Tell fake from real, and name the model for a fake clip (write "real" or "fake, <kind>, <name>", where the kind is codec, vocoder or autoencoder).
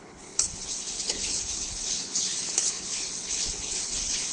fake, codec, HILCodec